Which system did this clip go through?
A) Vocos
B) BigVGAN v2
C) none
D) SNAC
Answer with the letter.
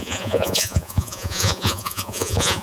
A